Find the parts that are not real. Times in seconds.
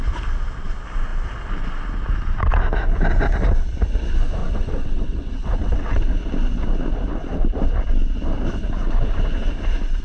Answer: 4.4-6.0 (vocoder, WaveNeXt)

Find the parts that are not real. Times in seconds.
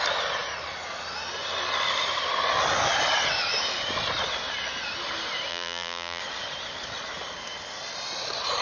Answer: 5.5-6.2 (vocoder, BigVGAN v2)